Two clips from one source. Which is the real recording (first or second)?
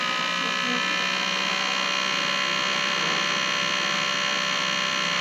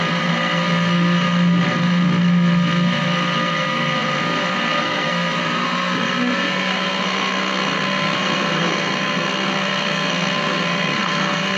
first